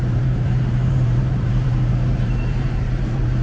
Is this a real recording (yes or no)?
no